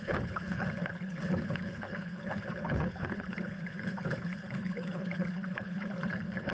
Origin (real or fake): fake